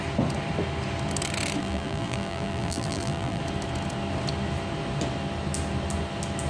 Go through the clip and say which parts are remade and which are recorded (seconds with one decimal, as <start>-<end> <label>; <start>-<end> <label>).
0.0-1.6 recorded; 1.6-3.4 remade; 3.4-6.5 recorded